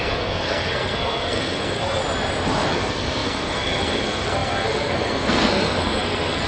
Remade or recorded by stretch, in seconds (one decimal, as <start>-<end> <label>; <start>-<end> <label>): 0.0-2.0 remade; 2.0-2.7 recorded; 2.7-6.5 remade